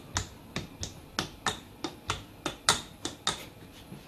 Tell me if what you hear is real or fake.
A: real